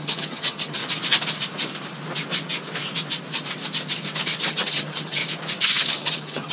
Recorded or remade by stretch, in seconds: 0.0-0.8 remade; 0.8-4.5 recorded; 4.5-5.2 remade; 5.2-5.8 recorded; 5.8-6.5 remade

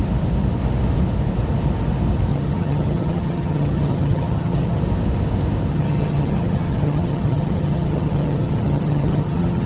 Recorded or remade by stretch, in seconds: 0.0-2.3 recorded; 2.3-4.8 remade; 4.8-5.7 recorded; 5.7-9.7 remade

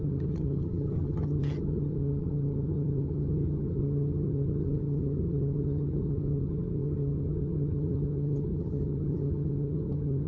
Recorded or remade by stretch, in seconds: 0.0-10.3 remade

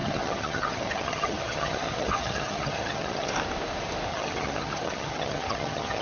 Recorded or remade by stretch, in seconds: 0.0-3.3 remade; 3.3-4.1 recorded; 4.1-6.0 remade